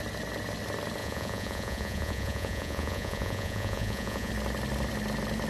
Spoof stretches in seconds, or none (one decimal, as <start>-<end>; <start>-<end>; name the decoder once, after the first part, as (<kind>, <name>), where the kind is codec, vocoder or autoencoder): 1.0-4.3 (vocoder, Vocos)